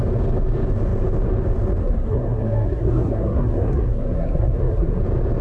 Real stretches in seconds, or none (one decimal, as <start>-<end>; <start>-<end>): 0.0-1.8; 5.0-5.4

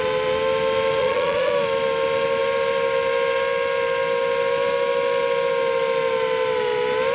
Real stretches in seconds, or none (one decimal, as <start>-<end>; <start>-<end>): 0.0-1.0; 1.5-7.1

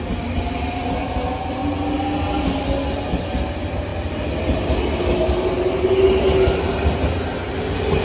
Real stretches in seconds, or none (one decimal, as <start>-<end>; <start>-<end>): 0.0-8.0

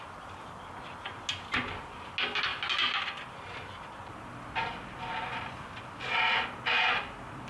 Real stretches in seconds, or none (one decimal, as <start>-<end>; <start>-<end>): 0.0-7.5

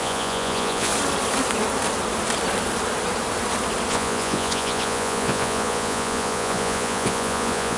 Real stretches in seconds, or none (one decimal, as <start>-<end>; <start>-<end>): 0.9-3.9

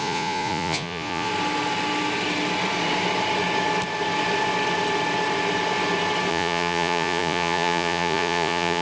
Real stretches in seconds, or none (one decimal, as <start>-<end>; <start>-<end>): 1.3-6.3

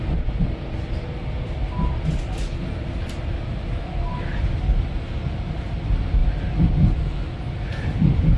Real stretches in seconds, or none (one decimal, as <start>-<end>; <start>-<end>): 0.0-8.4